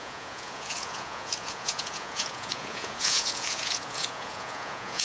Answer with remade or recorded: remade